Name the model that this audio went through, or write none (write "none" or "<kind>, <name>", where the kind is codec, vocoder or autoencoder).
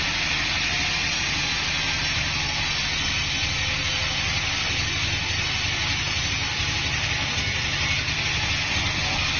none